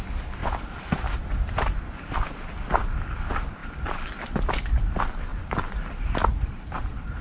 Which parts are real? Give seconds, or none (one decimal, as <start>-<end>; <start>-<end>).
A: 0.0-3.6; 4.3-5.3; 6.6-7.2

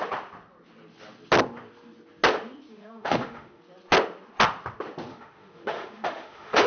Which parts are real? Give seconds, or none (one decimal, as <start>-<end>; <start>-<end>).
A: 0.0-2.7; 3.6-5.1